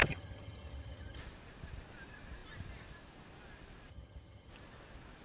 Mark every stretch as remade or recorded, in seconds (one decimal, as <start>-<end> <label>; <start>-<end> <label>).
0.0-1.2 remade; 1.2-3.9 recorded; 3.9-4.5 remade; 4.5-5.2 recorded